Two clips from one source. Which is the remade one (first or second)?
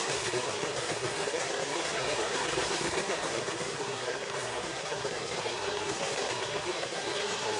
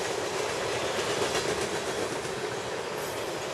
first